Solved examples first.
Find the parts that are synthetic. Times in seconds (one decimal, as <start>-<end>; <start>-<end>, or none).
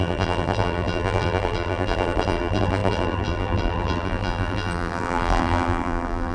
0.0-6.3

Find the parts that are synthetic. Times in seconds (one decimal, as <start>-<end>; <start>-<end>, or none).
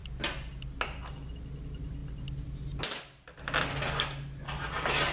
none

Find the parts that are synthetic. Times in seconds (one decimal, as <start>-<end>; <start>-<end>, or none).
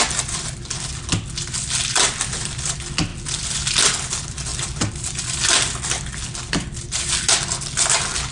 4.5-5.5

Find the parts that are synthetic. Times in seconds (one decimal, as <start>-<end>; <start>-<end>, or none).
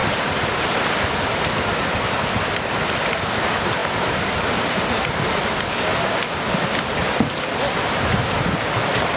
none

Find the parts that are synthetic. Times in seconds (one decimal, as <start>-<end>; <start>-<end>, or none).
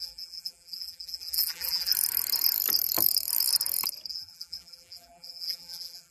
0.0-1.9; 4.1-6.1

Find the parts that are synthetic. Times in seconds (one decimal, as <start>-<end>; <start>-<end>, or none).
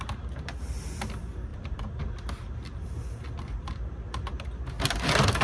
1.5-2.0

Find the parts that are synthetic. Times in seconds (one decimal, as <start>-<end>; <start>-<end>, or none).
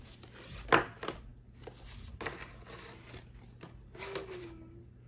none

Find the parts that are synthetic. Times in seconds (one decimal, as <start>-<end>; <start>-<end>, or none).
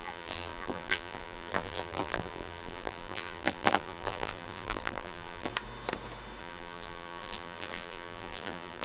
0.0-5.5; 6.4-8.8